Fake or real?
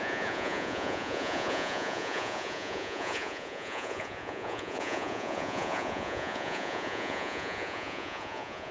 fake